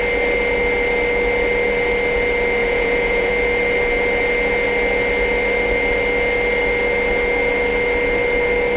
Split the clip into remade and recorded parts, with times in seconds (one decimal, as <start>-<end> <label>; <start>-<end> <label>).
0.0-2.6 recorded; 2.6-3.3 remade; 3.3-8.8 recorded